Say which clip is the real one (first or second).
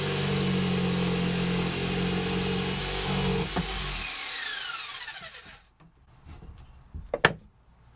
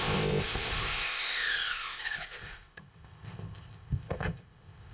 first